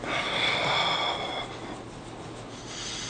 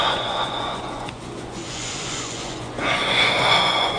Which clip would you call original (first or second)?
first